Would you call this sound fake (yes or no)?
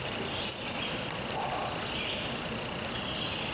no